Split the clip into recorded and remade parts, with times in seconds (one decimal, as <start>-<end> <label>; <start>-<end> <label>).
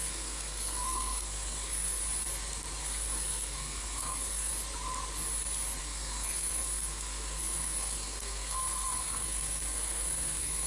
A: 0.0-2.0 remade; 2.0-2.8 recorded; 2.8-4.5 remade; 4.5-5.8 recorded; 5.8-10.7 remade